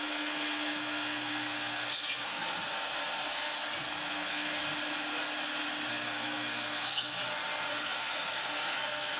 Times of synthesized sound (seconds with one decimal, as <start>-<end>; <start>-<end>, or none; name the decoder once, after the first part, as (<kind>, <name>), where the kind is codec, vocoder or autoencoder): 0.0-3.5 (codec, SNAC); 4.1-4.6; 5.9-7.2; 7.7-9.2